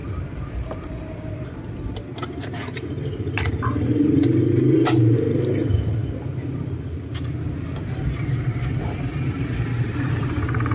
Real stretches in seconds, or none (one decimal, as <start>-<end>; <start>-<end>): 6.0-8.4